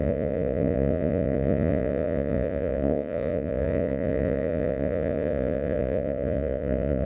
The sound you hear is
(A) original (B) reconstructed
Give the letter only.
B